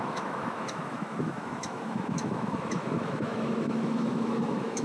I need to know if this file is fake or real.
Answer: fake